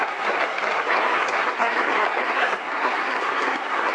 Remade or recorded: remade